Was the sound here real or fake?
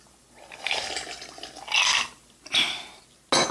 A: real